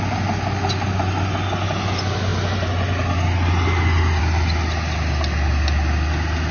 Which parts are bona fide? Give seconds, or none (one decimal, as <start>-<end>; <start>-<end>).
0.0-6.5